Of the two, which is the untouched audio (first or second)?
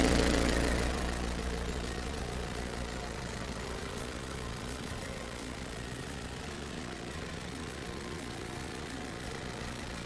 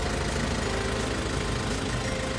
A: second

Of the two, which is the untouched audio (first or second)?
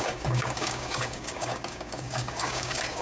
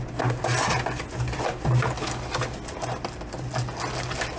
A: second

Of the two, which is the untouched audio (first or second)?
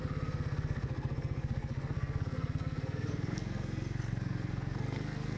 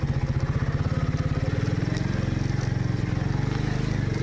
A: second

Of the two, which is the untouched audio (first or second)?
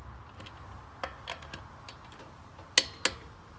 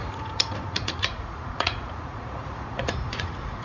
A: first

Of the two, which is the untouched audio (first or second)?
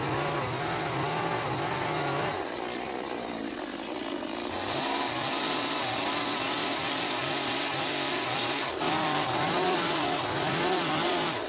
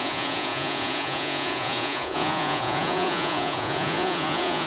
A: first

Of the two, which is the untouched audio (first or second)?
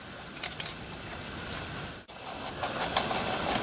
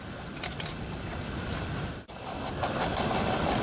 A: first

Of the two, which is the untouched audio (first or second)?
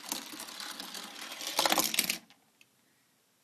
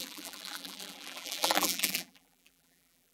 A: first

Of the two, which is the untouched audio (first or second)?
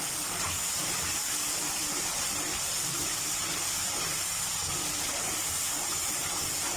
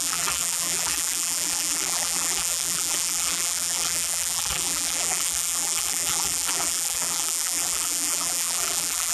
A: first